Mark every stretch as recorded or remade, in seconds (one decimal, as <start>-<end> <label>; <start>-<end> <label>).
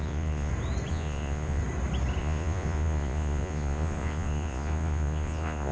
0.0-0.5 remade; 0.5-0.9 recorded; 0.9-1.6 remade; 1.6-2.2 recorded; 2.2-5.7 remade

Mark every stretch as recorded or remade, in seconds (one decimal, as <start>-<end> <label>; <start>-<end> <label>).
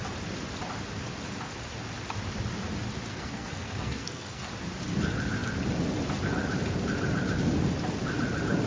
0.0-3.1 recorded; 3.1-4.5 remade; 4.5-8.7 recorded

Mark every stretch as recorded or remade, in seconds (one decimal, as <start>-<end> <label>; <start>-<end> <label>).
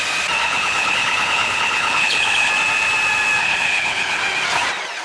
0.0-0.4 recorded; 0.4-2.5 remade; 2.5-3.4 recorded; 3.4-4.2 remade; 4.2-5.0 recorded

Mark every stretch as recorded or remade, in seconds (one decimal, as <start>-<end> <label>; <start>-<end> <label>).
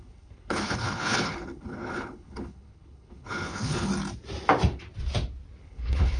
0.0-3.9 remade; 3.9-5.6 recorded; 5.6-6.2 remade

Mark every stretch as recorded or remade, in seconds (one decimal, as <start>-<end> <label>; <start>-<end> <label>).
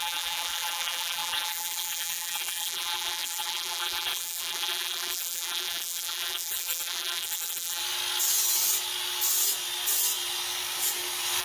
0.0-7.8 remade; 7.8-11.4 recorded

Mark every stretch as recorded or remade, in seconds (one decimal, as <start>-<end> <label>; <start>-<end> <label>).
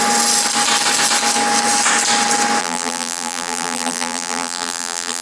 0.0-2.6 recorded; 2.6-5.2 remade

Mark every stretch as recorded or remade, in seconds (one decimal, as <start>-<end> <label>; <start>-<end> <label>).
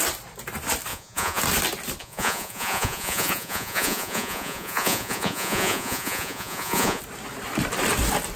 0.0-0.9 recorded; 0.9-1.4 remade; 1.4-2.0 recorded; 2.0-7.0 remade; 7.0-8.4 recorded